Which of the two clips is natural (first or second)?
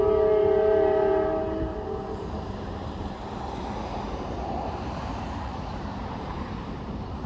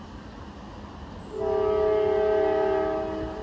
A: second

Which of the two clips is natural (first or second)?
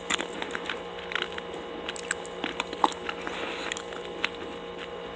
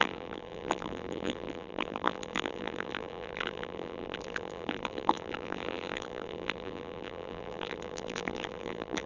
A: first